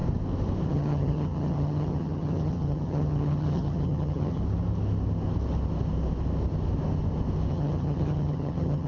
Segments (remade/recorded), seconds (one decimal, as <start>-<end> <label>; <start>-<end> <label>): 0.0-0.7 recorded; 0.7-4.4 remade; 4.4-7.5 recorded; 7.5-8.9 remade